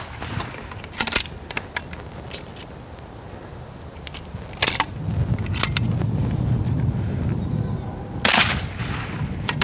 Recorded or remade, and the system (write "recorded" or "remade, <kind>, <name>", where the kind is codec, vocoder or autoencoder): recorded